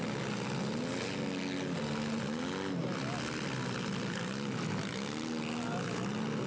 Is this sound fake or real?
real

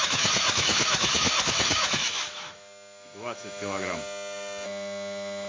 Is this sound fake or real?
fake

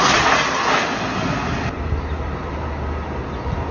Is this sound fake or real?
real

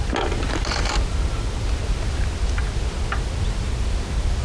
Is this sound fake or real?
real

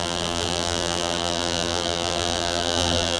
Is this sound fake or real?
fake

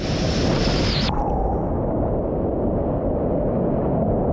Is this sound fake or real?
real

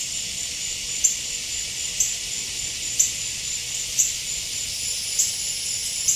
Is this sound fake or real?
fake